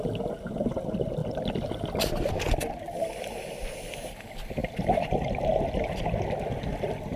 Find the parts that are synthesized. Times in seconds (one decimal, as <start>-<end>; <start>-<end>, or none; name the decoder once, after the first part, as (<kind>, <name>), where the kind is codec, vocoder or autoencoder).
none